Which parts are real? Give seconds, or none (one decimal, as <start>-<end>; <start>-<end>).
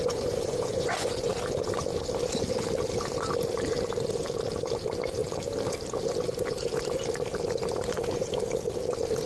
1.3-9.3